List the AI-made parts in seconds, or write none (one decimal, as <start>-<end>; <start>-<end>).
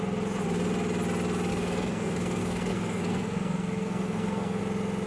1.5-4.6